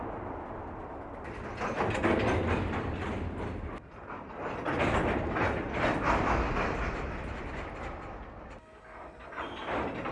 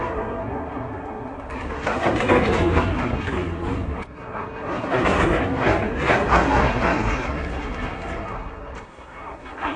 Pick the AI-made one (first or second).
second